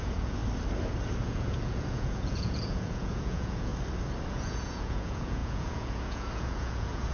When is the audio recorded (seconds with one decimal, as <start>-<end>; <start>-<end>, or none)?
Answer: 0.4-1.2; 3.7-4.3